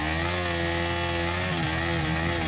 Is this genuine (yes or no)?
yes